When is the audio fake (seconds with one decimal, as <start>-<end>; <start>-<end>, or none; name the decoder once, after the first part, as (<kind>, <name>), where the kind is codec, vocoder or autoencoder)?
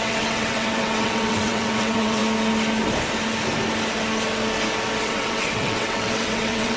0.0-2.2 (vocoder, WaveNeXt); 5.0-6.8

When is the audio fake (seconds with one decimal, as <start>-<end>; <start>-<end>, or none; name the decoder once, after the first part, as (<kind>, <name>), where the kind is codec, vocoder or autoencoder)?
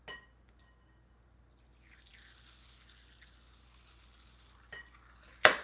none